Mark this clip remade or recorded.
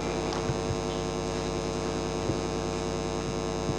recorded